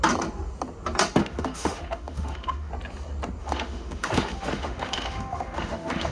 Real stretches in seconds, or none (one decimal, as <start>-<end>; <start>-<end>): 0.0-1.2; 2.7-3.4